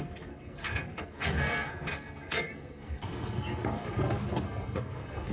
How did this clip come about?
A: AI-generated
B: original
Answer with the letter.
A